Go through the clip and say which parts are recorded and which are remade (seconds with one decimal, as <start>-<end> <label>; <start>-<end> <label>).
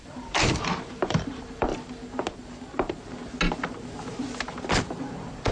0.0-1.7 remade; 1.7-5.0 recorded; 5.0-5.5 remade